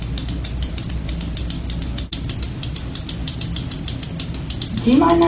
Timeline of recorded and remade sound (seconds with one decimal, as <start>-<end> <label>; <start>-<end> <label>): 0.0-5.3 recorded